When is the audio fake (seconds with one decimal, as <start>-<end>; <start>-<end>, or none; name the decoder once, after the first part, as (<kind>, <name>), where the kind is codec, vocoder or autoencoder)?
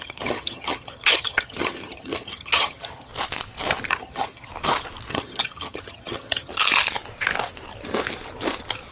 0.0-3.1 (vocoder, HiFi-GAN); 3.9-4.5; 5.1-6.5